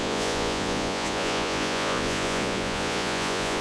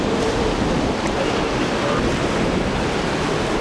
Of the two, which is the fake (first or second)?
first